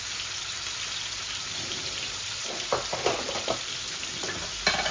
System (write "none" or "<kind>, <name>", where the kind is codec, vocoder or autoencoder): none